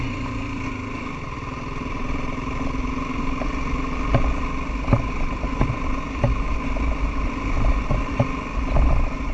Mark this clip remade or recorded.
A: remade